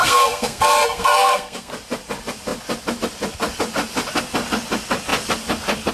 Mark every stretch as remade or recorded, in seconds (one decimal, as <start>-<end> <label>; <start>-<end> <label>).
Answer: 0.0-1.7 remade; 1.7-5.9 recorded